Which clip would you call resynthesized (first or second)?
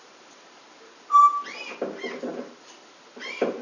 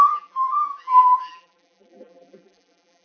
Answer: second